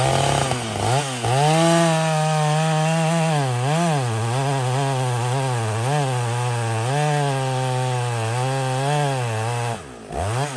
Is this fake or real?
real